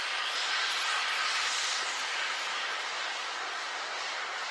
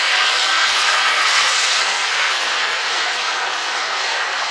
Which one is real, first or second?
first